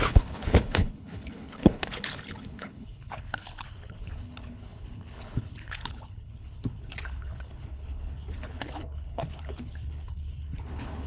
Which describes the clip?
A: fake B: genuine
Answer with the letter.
A